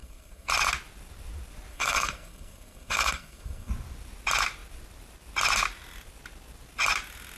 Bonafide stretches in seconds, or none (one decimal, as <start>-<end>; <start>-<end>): 0.5-1.7; 3.7-7.4